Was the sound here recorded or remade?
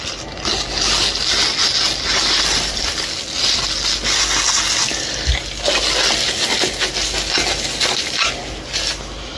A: recorded